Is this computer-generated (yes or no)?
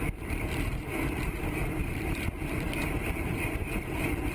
yes